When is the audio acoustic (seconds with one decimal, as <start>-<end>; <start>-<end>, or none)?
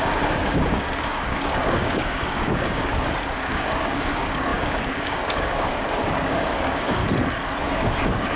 2.8-3.4; 7.0-7.6